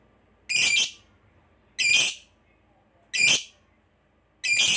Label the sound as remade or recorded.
recorded